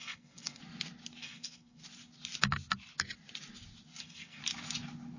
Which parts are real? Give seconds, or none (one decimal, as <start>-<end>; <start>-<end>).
0.6-1.2; 1.8-4.0; 4.4-5.2